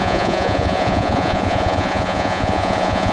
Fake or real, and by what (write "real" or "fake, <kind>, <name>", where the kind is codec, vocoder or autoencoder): fake, vocoder, Vocos